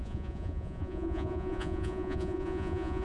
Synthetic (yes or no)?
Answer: yes